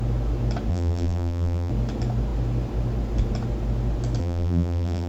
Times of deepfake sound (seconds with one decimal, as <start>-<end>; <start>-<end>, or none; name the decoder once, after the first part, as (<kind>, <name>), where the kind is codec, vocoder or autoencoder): 0.7-1.7 (vocoder, BigVGAN v2); 4.2-5.1